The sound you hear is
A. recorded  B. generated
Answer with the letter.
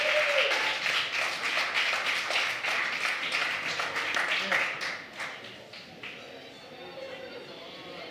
A